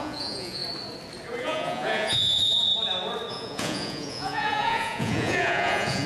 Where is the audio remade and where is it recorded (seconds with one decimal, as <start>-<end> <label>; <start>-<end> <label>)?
0.0-0.6 remade; 0.6-1.4 recorded; 1.4-2.7 remade; 2.7-3.3 recorded; 3.3-6.1 remade